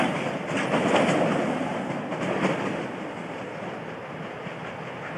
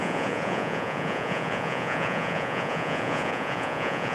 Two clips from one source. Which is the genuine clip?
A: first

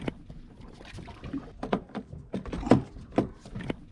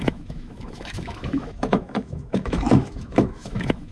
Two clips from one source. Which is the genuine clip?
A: first